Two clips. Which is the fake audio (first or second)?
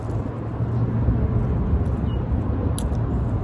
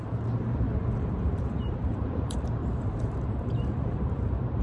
second